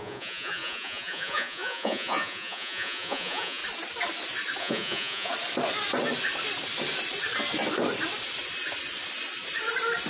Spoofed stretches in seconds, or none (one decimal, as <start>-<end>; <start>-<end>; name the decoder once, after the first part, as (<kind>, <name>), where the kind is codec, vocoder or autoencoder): 0.0-3.6 (vocoder, Vocos); 4.6-5.3

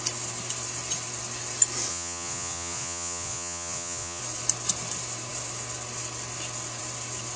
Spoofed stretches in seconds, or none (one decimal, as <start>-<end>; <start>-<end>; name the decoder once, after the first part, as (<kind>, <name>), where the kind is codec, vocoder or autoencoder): 1.9-4.2 (vocoder, Vocos)

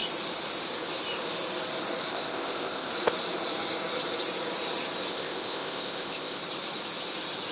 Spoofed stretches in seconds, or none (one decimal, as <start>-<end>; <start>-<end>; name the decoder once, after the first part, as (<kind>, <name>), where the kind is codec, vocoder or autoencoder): 2.1-2.9 (codec, ZipCodec); 5.1-6.4

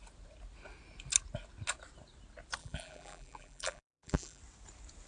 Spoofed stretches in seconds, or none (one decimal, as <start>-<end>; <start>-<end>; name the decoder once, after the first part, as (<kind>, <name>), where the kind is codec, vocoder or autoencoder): 2.6-4.4 (vocoder, BigVGAN v2)

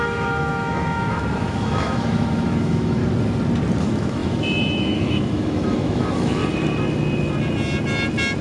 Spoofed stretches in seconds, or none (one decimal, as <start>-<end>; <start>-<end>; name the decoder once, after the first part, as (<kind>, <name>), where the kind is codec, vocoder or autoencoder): 0.0-3.0 (autoencoder, DAC-VAE); 3.8-6.4

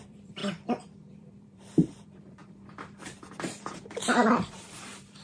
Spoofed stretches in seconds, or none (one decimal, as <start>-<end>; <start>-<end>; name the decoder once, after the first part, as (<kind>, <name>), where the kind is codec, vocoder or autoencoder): 0.0-0.4 (vocoder, BigVGAN v2); 1.1-5.2

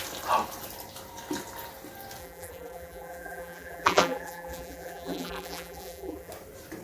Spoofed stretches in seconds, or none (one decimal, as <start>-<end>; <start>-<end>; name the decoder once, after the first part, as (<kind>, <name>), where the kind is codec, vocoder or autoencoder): 2.2-6.3 (vocoder, BigVGAN v2)

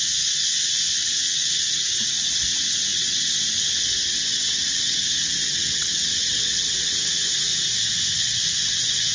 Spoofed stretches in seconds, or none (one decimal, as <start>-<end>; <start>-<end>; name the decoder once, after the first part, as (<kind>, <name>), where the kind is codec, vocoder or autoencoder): 0.0-7.5 (vocoder, WaveNeXt); 8.2-9.1